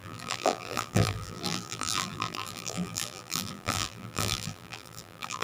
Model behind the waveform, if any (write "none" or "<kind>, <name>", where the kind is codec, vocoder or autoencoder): vocoder, BigVGAN v2